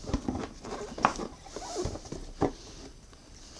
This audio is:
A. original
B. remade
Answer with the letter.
A